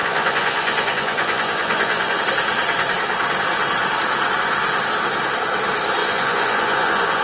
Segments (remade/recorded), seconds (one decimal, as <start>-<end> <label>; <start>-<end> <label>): 0.0-2.2 remade; 2.2-6.0 recorded; 6.0-7.2 remade